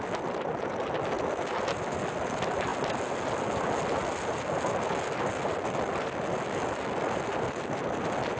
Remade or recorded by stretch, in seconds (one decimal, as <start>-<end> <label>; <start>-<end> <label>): 0.0-8.4 recorded